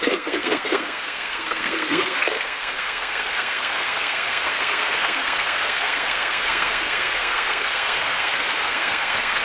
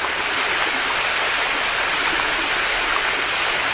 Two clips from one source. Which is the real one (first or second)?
second